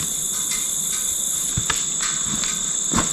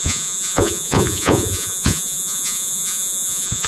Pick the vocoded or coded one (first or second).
second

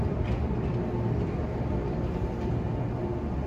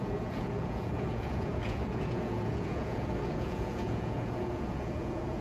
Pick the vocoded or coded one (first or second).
second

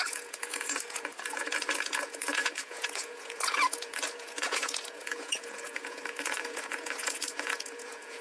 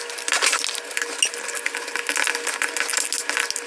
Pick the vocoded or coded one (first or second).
first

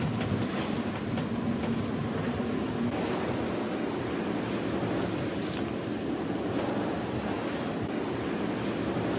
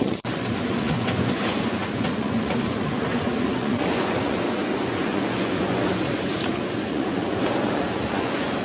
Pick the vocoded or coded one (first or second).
second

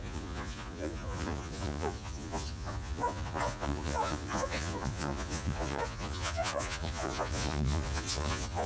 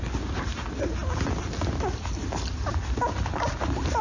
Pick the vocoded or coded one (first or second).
first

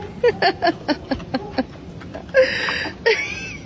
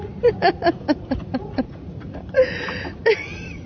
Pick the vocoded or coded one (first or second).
second